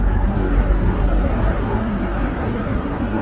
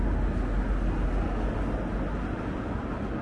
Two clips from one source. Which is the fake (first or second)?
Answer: first